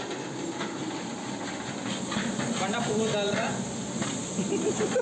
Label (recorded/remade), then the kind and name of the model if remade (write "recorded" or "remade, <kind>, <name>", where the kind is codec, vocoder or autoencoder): recorded